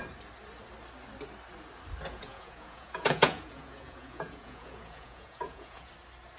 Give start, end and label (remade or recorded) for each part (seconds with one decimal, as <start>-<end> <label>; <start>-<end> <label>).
0.0-2.1 recorded; 2.1-5.9 remade; 5.9-6.4 recorded